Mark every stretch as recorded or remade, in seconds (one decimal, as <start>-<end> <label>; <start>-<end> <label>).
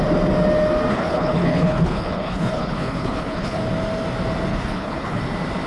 0.0-0.9 recorded; 0.9-3.6 remade; 3.6-4.5 recorded; 4.5-5.2 remade; 5.2-5.7 recorded